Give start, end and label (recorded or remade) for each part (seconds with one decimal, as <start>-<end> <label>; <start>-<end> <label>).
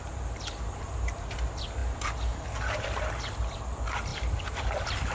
0.0-5.1 recorded